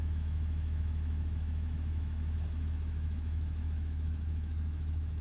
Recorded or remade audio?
remade